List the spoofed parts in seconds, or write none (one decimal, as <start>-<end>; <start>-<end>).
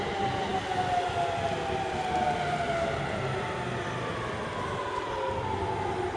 none